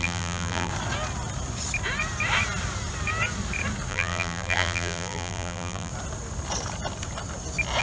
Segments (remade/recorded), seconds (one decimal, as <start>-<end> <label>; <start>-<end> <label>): 0.0-0.7 remade; 0.7-3.9 recorded; 3.9-5.9 remade; 5.9-7.8 recorded